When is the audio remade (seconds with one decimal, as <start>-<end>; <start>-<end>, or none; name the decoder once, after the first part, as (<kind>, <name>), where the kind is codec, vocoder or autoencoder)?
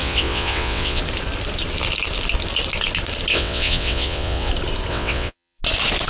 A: 0.0-1.0 (vocoder, WaveNeXt); 3.3-4.5; 4.9-5.6